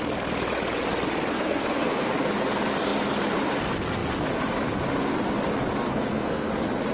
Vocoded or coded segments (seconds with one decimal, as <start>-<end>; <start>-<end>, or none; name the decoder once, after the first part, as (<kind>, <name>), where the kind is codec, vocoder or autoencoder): 1.3-2.1 (codec, SNAC); 5.8-6.5